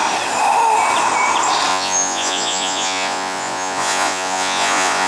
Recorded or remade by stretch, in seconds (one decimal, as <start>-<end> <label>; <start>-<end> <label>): 0.0-1.7 recorded; 1.7-5.1 remade